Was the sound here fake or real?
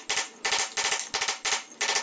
real